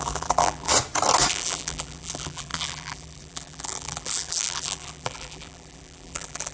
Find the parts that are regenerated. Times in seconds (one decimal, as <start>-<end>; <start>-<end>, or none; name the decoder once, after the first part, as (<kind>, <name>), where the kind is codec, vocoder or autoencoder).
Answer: 0.0-0.7 (vocoder, BigVGAN v2); 1.3-6.5

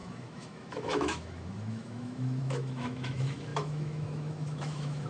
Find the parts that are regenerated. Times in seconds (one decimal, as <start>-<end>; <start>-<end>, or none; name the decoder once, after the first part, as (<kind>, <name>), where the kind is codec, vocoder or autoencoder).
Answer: 0.0-5.1 (autoencoder, DAC-VAE)

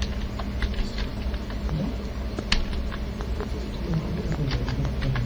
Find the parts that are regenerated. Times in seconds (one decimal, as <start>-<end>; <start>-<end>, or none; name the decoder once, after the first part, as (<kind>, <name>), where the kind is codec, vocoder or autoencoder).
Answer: 1.1-4.3 (vocoder, BigVGAN v2)

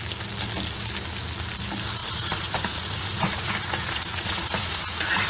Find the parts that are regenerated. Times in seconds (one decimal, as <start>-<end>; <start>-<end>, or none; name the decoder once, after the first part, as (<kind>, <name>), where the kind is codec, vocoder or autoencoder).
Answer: 2.0-5.3 (vocoder, Vocos)

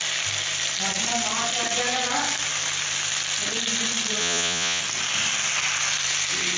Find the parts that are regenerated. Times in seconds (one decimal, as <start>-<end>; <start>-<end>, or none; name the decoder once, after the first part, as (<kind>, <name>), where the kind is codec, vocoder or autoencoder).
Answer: 4.2-4.8 (vocoder, Vocos)